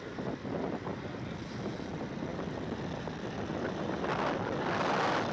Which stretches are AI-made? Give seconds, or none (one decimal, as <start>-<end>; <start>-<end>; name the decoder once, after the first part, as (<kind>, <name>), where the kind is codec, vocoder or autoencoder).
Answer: 0.9-1.6 (vocoder, BigVGAN v2); 2.3-3.3